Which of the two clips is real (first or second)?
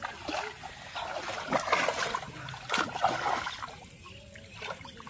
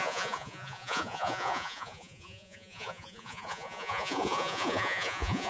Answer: first